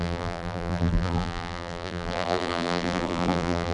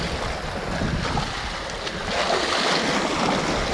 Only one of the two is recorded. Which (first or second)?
second